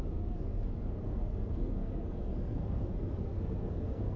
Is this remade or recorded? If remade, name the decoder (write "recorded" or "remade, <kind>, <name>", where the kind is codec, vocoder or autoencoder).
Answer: remade, codec, SNAC